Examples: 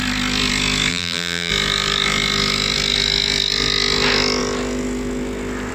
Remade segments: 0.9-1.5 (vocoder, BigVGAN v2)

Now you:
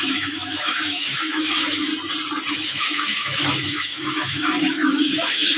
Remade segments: 0.0-1.9 (autoencoder, DAC-VAE); 2.5-5.6

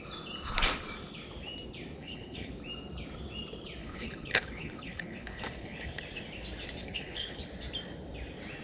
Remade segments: 2.0-2.5 (codec, HILCodec); 3.8-6.0; 6.8-7.4